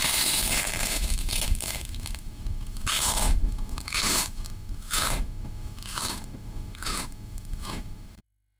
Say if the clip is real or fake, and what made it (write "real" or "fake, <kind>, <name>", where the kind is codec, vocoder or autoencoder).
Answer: fake, autoencoder, DAC-VAE